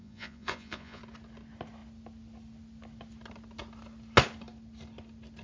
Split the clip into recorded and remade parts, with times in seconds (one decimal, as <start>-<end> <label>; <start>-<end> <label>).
0.0-1.0 remade; 1.0-5.4 recorded